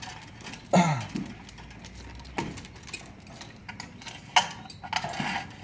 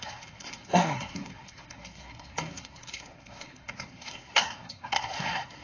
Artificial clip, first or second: second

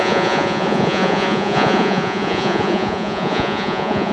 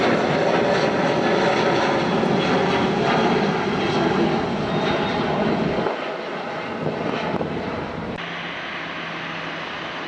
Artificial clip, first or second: first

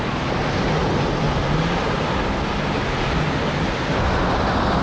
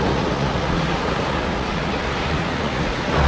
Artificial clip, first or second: second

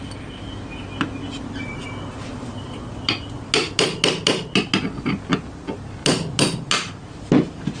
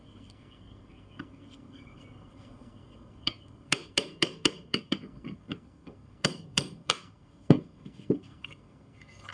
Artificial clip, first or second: second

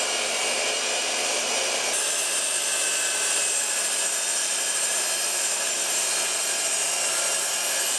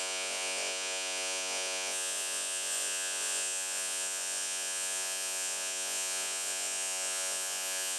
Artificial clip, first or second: second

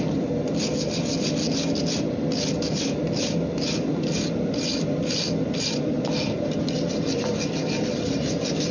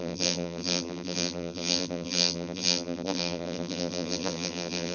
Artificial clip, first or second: second